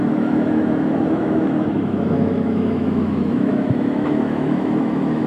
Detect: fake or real fake